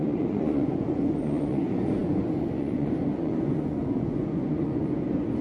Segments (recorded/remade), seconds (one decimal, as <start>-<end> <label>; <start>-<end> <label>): 0.0-5.4 remade